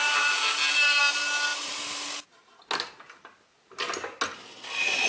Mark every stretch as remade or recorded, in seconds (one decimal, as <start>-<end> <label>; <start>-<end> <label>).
0.0-1.0 remade; 1.0-5.1 recorded

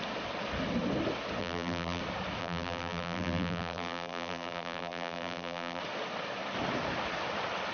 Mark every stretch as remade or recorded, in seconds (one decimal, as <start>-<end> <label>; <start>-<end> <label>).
0.0-1.4 recorded; 1.4-2.0 remade; 2.0-2.4 recorded; 2.4-5.8 remade; 5.8-7.7 recorded

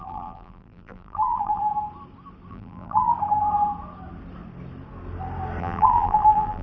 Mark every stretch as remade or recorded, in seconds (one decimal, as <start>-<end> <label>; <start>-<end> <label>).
0.0-1.6 remade; 1.6-2.5 recorded; 2.5-3.1 remade; 3.1-5.6 recorded; 5.6-6.6 remade

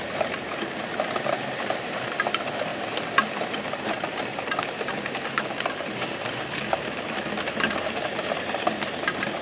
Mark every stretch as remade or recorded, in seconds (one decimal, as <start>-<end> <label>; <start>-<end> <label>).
0.0-2.7 remade; 2.7-3.8 recorded; 3.8-9.4 remade

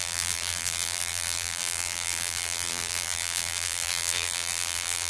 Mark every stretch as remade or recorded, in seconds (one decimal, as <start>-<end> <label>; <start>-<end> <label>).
0.0-5.1 remade